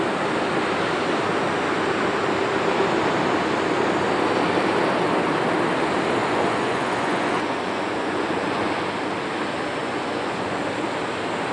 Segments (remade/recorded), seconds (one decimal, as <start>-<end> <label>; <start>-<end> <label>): 0.0-6.2 recorded; 6.2-8.7 remade; 8.7-9.8 recorded; 9.8-10.6 remade; 10.6-11.5 recorded